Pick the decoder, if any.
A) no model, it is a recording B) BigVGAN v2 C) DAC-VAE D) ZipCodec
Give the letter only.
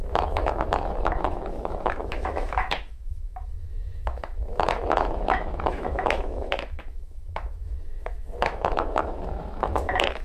C